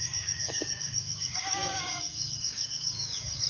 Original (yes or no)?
no